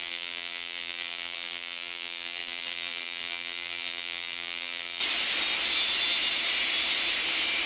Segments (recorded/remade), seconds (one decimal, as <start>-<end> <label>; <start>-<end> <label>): 0.0-5.0 remade; 5.0-7.7 recorded